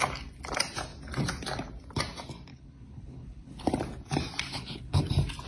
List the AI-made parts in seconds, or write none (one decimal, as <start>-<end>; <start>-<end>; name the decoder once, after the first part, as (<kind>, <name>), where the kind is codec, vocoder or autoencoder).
2.5-3.7 (codec, HILCodec); 4.5-5.0